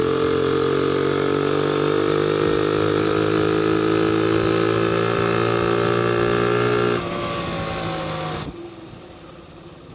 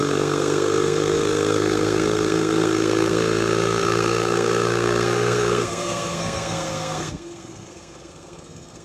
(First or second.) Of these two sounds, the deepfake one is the second